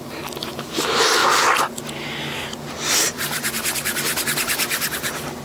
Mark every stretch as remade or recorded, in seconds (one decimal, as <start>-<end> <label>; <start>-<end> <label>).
0.0-5.4 recorded